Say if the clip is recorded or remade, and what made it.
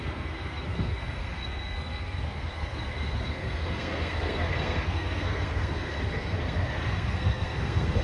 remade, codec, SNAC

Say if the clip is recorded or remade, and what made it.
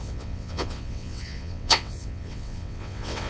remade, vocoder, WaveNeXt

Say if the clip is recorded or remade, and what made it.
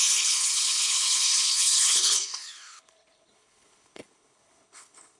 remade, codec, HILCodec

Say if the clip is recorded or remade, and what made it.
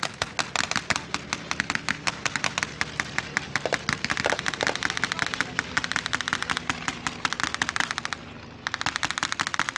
recorded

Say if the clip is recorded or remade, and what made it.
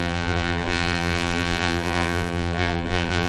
remade, vocoder, BigVGAN v2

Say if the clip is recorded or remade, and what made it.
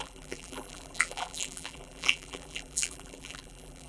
remade, vocoder, BigVGAN v2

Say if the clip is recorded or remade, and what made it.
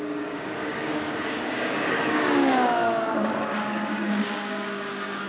remade, codec, DAC